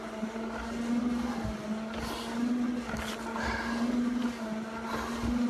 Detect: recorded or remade recorded